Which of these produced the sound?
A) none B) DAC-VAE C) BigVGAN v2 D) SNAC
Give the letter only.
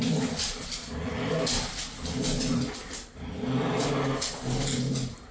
A